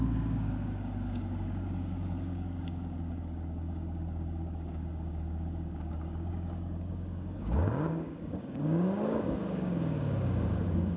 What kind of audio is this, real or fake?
fake